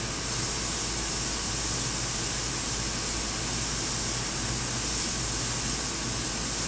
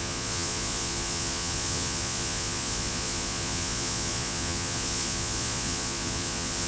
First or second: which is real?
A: first